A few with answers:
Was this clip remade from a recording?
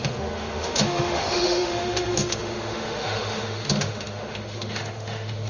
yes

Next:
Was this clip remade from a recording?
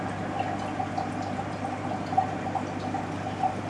no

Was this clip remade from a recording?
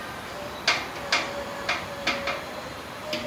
no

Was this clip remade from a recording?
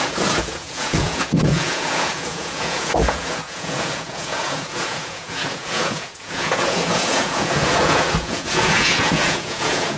yes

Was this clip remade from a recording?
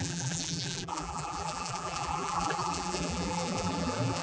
yes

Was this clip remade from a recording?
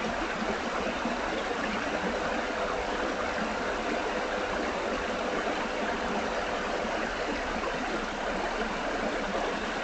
no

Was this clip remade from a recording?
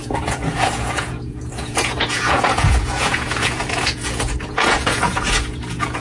yes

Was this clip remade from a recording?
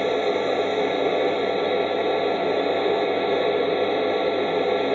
no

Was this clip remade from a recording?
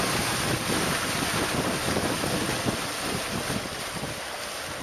no